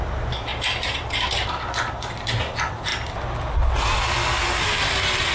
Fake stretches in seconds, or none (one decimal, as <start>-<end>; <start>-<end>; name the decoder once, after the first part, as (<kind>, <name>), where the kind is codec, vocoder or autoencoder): none